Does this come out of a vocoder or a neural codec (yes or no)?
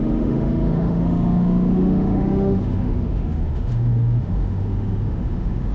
yes